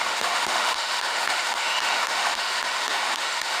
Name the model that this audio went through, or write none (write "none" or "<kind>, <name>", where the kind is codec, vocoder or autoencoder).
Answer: autoencoder, DAC-VAE